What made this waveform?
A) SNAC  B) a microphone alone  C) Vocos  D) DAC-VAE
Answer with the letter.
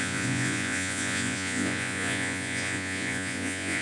C